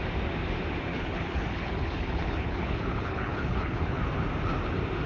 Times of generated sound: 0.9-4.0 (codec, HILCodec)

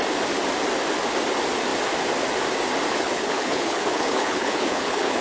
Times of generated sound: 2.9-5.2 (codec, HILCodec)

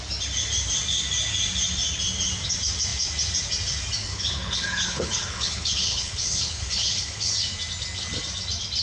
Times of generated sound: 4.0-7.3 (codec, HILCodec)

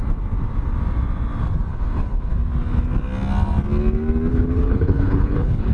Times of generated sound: 1.7-2.3 (codec, HILCodec); 4.3-5.7